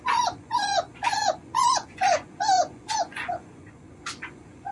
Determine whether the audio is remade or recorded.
remade